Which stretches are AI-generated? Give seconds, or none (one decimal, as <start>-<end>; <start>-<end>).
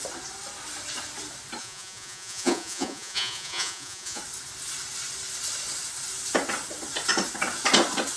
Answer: 1.6-4.2